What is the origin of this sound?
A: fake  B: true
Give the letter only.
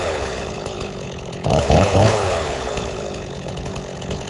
A